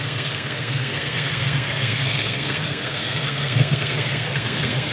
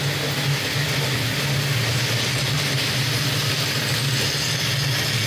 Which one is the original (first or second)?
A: second